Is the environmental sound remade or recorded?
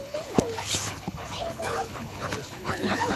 remade